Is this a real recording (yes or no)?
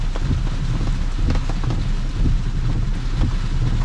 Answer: yes